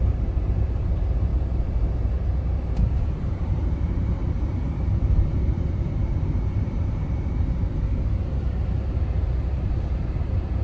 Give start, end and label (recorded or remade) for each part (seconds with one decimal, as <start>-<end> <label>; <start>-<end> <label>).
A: 0.0-1.3 remade; 1.3-2.0 recorded; 2.0-10.6 remade